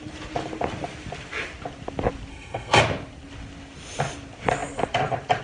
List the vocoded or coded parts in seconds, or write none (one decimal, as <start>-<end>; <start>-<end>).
2.3-2.8